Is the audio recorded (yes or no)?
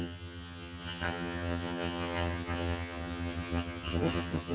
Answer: no